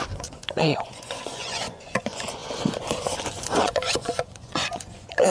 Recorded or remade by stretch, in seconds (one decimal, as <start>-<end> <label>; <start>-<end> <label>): 0.0-5.3 remade